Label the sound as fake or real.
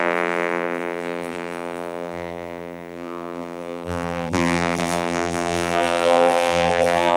fake